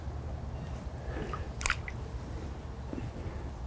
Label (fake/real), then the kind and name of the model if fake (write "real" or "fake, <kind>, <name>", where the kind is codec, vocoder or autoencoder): real